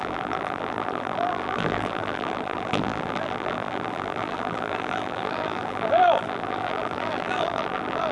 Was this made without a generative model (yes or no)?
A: no